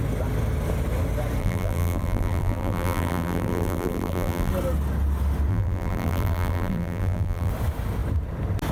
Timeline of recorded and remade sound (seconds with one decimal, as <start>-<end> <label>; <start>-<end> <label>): 0.0-1.4 recorded; 1.4-4.5 remade; 4.5-5.5 recorded; 5.5-7.5 remade; 7.5-8.7 recorded